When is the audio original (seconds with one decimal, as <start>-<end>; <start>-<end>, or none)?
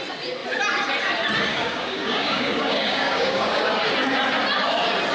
0.0-1.5; 3.7-5.1